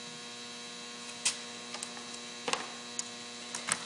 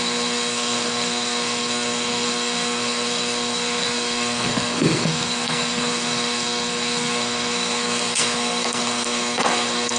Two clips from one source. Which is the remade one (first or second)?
second